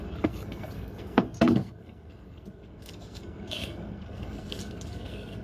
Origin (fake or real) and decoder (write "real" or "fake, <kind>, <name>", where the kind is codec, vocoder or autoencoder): fake, codec, SNAC